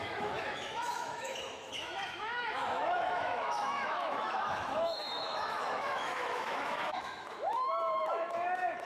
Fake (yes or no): yes